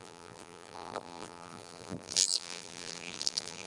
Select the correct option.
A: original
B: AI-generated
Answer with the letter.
B